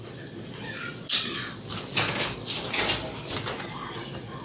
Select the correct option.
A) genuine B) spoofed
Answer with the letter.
A